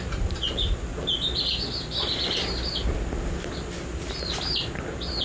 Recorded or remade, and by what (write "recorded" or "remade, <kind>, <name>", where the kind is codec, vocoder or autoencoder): recorded